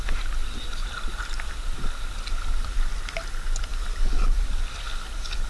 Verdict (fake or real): real